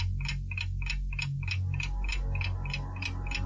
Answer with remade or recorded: recorded